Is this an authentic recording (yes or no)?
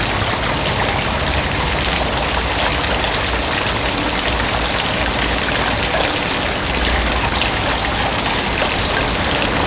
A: yes